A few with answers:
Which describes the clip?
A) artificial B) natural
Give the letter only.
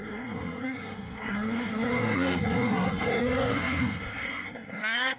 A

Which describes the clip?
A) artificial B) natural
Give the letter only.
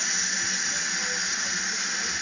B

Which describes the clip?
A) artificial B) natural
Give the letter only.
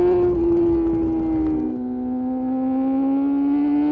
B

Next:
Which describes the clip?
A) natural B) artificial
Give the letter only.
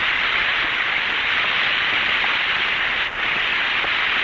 A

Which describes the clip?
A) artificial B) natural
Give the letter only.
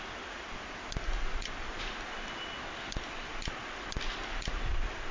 B